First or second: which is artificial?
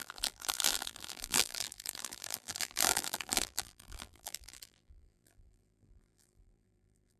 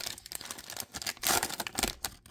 first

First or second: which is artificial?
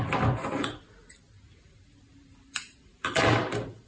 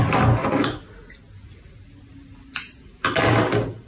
first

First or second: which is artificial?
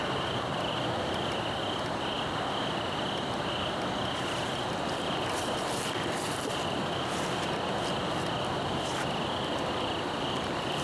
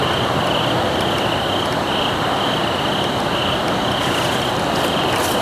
first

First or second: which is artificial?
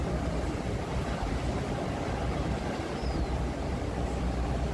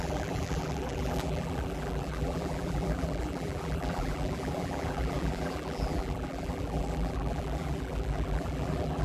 second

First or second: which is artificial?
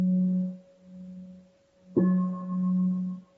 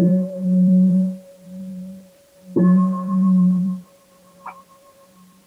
second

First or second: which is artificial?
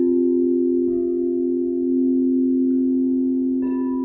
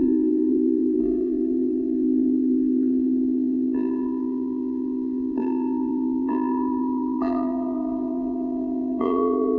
second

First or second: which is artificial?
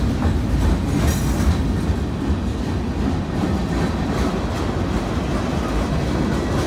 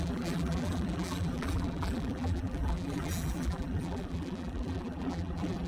second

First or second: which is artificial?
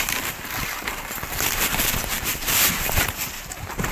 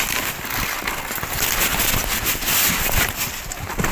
first